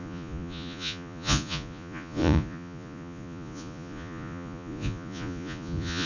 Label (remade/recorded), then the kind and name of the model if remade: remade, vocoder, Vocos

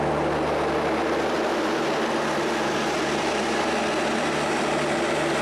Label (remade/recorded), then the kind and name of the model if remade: recorded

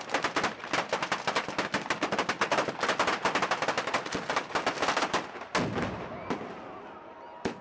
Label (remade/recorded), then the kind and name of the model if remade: recorded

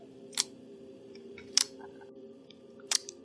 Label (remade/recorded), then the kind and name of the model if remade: remade, vocoder, BigVGAN v2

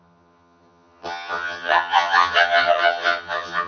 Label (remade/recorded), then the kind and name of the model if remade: remade, vocoder, HiFi-GAN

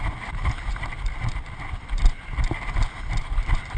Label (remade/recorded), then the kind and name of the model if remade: remade, vocoder, BigVGAN v2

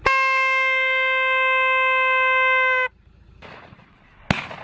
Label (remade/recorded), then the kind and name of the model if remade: recorded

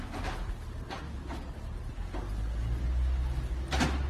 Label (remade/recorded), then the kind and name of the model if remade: recorded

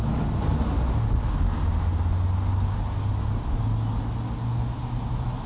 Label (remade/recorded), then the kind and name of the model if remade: recorded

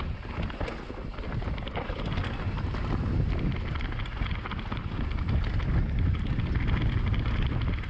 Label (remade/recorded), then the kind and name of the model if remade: recorded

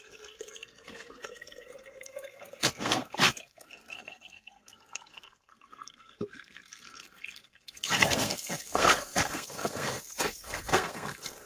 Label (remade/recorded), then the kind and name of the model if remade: remade, codec, SNAC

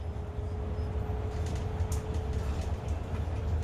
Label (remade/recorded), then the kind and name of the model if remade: recorded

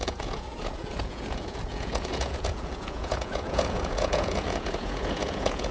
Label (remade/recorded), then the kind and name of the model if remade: remade, vocoder, Vocos